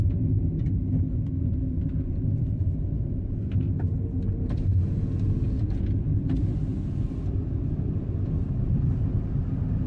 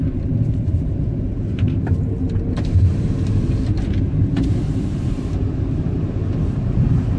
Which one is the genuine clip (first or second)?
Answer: first